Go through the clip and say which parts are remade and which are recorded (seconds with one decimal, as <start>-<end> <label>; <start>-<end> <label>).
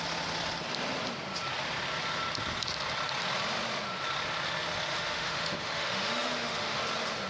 0.0-4.9 recorded; 4.9-6.8 remade; 6.8-7.3 recorded